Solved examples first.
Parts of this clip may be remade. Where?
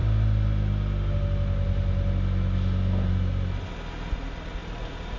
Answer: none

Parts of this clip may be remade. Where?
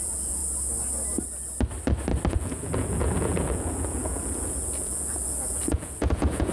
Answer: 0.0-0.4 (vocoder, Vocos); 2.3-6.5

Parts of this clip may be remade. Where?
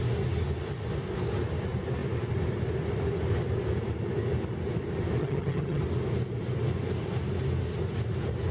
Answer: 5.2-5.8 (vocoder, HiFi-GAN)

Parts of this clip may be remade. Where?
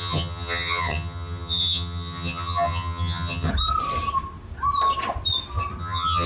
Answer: 0.0-3.5 (vocoder, HiFi-GAN); 5.8-6.3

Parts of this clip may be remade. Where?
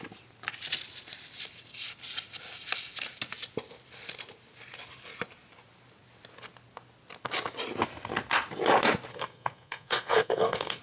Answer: 9.1-10.8 (codec, SNAC)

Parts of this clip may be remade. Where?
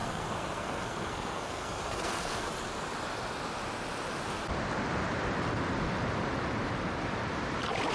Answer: 0.0-2.5 (codec, SNAC)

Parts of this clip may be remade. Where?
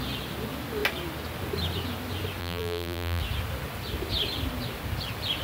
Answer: 2.4-3.2 (vocoder, BigVGAN v2)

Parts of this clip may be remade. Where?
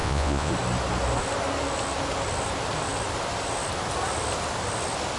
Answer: 0.0-0.5 (vocoder, Vocos)